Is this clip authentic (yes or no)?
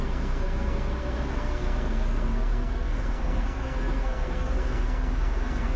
no